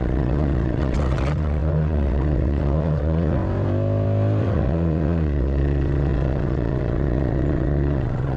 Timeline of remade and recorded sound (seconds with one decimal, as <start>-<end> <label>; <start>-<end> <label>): 0.0-3.4 remade; 3.4-4.4 recorded; 4.4-8.4 remade